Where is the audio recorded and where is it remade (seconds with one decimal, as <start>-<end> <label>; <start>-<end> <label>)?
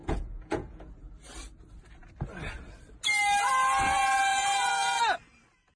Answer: 0.0-0.9 remade; 0.9-4.3 recorded; 4.3-5.0 remade; 5.0-5.8 recorded